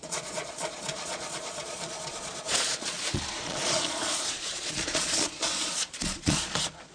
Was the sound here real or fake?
fake